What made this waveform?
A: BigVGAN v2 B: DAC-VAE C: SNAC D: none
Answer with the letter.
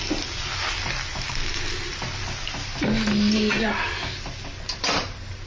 D